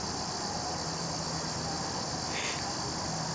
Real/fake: real